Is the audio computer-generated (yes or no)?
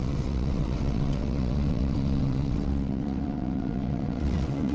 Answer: yes